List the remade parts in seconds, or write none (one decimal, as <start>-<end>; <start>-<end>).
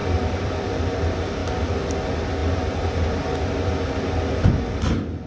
0.0-0.8; 1.4-1.9; 2.4-4.5